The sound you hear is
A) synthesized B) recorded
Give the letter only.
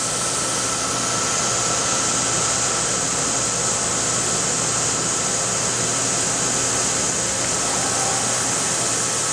B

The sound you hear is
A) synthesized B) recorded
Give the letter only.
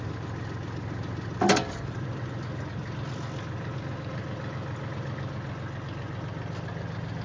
B